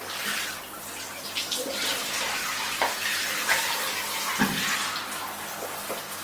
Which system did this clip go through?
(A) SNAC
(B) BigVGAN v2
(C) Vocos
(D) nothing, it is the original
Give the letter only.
D